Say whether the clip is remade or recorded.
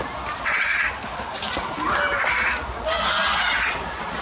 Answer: recorded